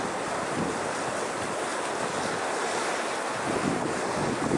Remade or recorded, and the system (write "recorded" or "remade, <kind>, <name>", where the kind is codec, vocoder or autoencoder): recorded